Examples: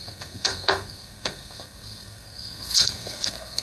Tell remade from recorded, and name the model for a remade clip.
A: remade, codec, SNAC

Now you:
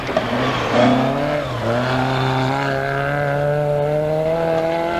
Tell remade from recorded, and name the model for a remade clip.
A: recorded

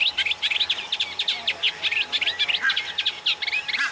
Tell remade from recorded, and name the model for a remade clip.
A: recorded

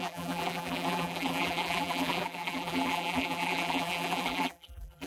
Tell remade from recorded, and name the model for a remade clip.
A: remade, vocoder, BigVGAN v2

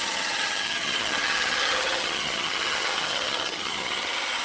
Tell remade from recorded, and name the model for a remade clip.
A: remade, vocoder, HiFi-GAN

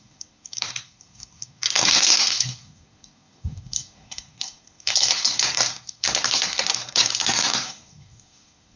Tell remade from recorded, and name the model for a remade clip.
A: remade, codec, SNAC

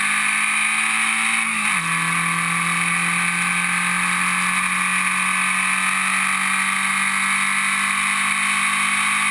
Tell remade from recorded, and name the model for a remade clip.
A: recorded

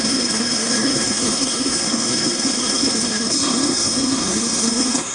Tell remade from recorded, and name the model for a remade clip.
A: remade, codec, SNAC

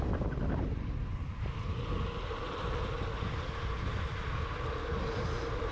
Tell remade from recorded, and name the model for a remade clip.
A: recorded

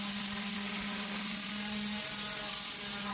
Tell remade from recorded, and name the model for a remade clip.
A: recorded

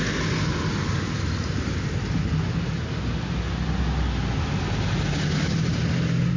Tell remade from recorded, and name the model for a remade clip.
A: recorded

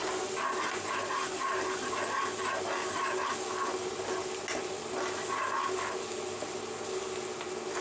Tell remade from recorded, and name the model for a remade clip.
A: recorded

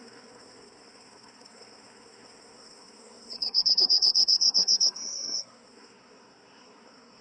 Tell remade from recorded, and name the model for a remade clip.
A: remade, codec, SNAC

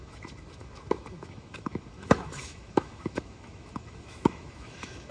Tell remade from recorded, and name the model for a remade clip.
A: remade, autoencoder, DAC-VAE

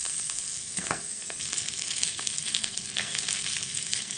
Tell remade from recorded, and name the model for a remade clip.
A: remade, codec, SNAC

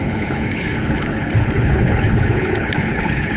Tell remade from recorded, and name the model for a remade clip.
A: remade, codec, HILCodec